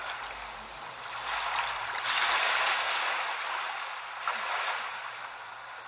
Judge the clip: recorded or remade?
recorded